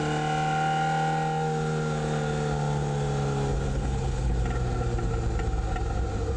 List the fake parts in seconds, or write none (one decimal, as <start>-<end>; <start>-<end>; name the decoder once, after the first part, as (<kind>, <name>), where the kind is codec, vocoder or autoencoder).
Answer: 3.7-4.4 (codec, HILCodec)